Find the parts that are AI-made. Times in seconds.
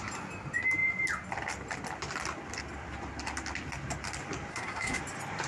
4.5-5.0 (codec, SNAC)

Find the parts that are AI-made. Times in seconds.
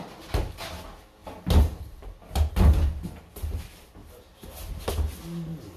none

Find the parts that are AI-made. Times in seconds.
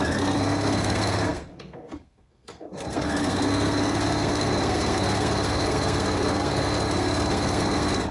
0.0-8.1 (codec, SNAC)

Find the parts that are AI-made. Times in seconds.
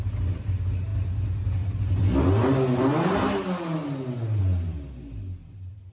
none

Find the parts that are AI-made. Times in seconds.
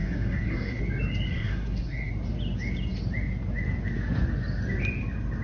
0.0-0.8 (codec, SNAC); 1.3-2.1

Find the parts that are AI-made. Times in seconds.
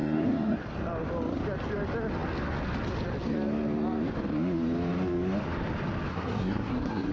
0.0-0.6 (codec, SNAC); 6.1-7.1